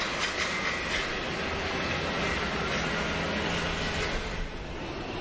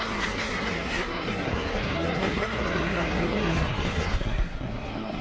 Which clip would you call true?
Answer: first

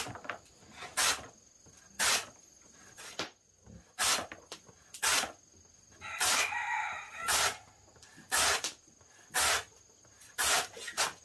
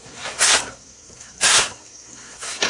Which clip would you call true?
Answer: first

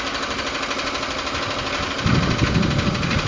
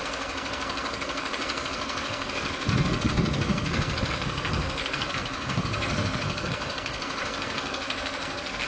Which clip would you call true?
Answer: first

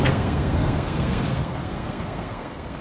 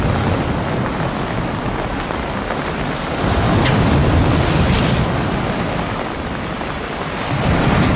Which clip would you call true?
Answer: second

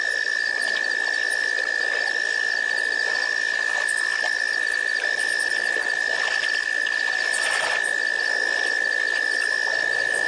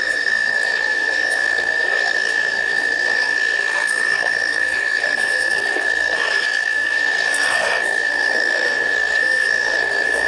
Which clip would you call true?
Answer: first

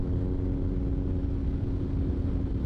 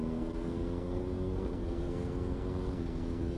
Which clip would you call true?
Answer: first